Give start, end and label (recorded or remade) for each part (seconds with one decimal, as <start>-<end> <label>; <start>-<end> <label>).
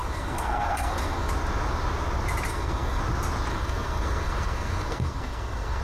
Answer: 0.0-1.3 remade; 1.3-2.5 recorded; 2.5-3.0 remade; 3.0-3.5 recorded; 3.5-5.8 remade